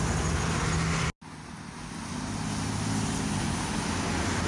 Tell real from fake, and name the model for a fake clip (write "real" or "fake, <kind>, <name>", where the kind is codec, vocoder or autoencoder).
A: real